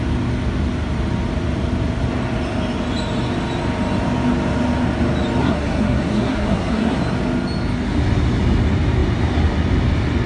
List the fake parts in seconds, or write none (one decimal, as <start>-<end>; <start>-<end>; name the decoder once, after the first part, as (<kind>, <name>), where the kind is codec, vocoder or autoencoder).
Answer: 5.4-7.0 (codec, SNAC)